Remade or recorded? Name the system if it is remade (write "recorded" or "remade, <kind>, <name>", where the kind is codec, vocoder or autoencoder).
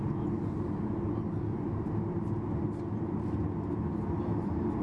recorded